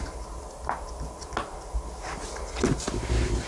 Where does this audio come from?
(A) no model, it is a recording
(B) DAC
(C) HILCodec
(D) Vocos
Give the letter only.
A